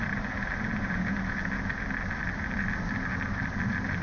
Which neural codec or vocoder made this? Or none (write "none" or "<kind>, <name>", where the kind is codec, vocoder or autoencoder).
none